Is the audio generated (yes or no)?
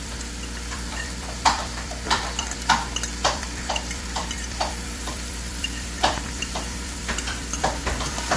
yes